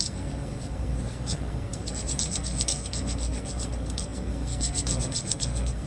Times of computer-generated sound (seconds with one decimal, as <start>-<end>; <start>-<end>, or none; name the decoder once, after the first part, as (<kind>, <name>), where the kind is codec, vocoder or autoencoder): 0.0-5.9 (codec, SNAC)